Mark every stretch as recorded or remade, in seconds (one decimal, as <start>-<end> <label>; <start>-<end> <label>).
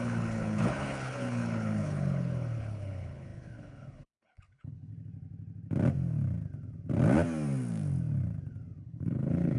0.0-4.9 remade; 4.9-8.8 recorded; 8.8-9.6 remade